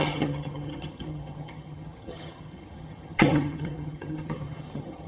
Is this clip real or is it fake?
fake